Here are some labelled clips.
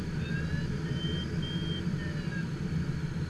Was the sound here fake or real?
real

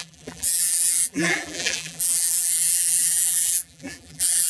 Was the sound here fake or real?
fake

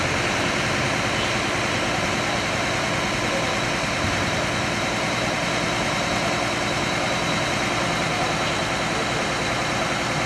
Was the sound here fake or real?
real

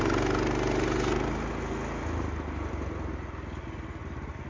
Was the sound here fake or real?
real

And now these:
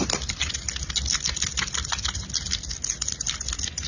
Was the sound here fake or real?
real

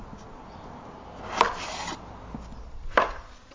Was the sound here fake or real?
real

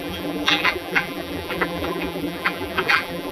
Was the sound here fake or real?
fake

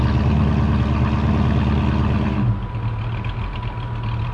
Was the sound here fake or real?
real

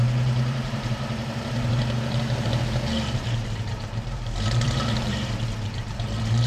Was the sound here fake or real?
fake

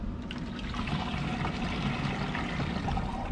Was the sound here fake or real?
real